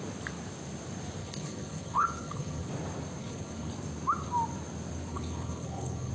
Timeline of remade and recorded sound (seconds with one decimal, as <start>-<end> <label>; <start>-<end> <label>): 0.0-1.2 recorded; 1.2-2.7 remade; 2.7-3.2 recorded; 3.2-3.7 remade; 3.7-5.1 recorded; 5.1-6.1 remade